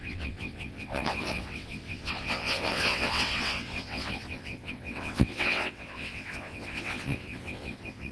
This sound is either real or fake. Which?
fake